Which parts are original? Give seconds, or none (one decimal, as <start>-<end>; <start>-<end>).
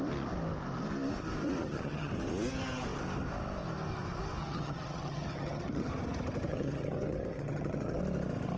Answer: 0.0-1.6; 2.1-4.4; 5.9-6.5; 8.0-8.6